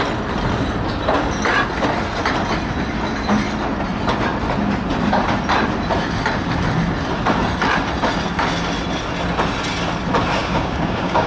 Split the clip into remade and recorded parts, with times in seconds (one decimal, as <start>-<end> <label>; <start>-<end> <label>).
0.0-10.4 recorded; 10.4-11.3 remade